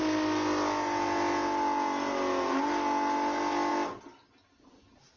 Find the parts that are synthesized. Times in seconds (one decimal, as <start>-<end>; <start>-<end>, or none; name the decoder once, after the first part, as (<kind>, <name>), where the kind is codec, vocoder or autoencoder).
none